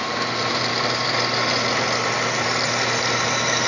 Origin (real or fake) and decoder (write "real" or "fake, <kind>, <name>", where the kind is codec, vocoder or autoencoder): real